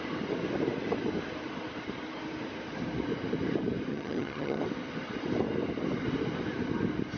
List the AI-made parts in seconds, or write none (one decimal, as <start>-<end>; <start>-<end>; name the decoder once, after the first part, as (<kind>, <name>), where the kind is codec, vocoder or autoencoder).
3.9-4.6 (vocoder, HiFi-GAN)